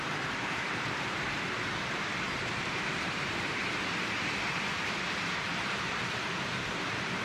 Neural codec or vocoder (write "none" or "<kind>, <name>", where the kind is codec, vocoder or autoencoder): vocoder, BigVGAN v2